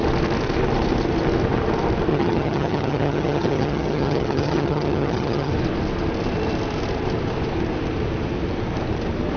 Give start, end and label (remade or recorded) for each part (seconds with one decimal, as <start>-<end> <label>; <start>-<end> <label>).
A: 0.0-2.1 recorded; 2.1-5.5 remade; 5.5-9.4 recorded